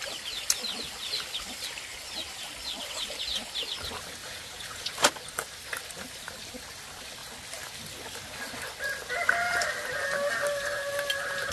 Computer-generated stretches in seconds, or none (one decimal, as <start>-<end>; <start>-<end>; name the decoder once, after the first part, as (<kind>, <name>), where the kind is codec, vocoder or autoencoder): 4.2-4.9 (vocoder, Vocos)